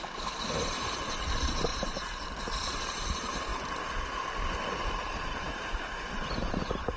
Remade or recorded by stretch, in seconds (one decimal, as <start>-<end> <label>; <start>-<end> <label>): 0.0-3.5 remade; 3.5-4.7 recorded; 4.7-7.0 remade